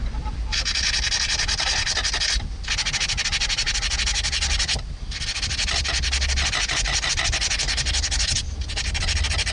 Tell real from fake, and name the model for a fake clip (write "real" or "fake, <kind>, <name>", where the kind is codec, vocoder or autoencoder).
real